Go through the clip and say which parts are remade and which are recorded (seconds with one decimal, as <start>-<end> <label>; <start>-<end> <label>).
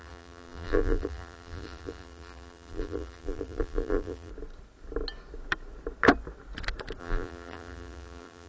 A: 0.0-4.3 remade; 4.3-7.0 recorded; 7.0-8.5 remade